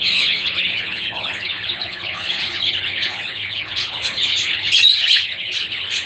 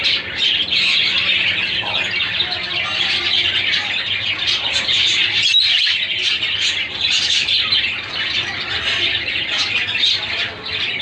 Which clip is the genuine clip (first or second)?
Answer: second